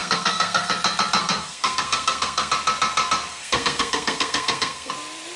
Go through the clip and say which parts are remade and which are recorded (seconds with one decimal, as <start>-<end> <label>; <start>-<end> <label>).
0.0-0.7 remade; 0.7-1.2 recorded; 1.2-2.5 remade; 2.5-3.3 recorded; 3.3-4.9 remade; 4.9-5.4 recorded